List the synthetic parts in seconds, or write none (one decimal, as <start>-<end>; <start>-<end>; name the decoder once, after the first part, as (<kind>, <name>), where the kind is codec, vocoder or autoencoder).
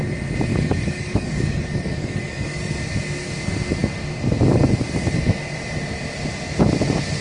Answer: 0.5-2.7 (codec, DAC)